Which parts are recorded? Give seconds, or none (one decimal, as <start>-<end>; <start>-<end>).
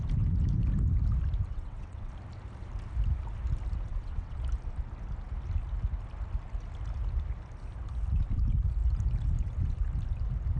0.0-1.5; 2.1-3.9; 4.4-10.6